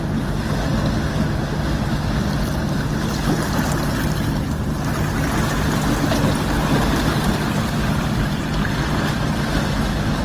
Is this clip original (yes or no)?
yes